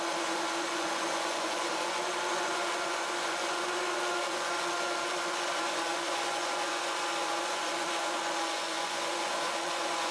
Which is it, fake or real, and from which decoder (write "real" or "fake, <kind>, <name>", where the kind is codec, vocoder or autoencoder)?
fake, vocoder, Vocos